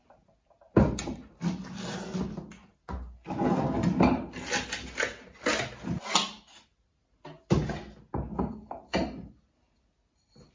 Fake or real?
real